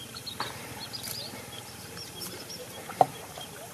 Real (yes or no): no